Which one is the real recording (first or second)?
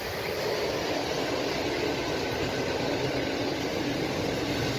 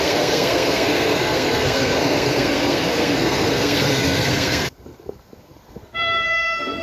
first